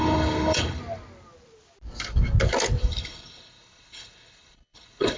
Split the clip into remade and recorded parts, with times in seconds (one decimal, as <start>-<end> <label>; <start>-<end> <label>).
0.0-0.8 remade; 0.8-2.8 recorded; 2.8-5.2 remade